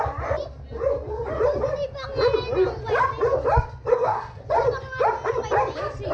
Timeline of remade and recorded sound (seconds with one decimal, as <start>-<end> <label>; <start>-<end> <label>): 0.0-3.9 recorded; 3.9-4.4 remade; 4.4-6.1 recorded